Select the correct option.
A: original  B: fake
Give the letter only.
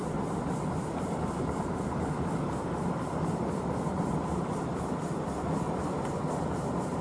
B